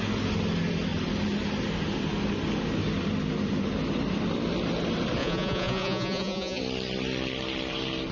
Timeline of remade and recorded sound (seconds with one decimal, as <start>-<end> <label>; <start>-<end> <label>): 0.0-5.2 recorded; 5.2-6.6 remade; 6.6-8.1 recorded